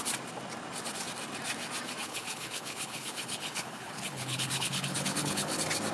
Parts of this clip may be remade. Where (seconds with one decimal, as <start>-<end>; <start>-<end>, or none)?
2.0-5.5